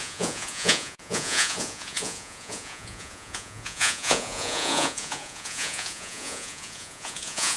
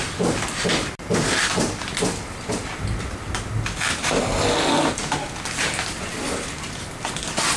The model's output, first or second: first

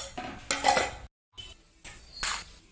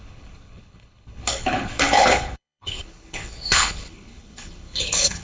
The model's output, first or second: second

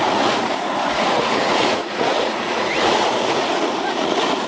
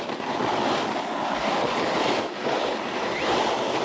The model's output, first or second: first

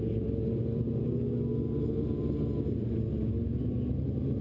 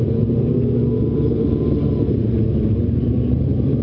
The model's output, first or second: second